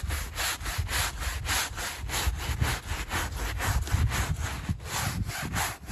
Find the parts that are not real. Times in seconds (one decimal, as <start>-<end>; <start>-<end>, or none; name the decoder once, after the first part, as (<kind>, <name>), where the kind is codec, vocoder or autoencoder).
none